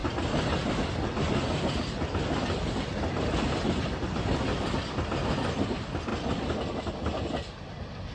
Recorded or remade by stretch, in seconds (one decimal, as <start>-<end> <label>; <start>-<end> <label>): 0.0-8.1 recorded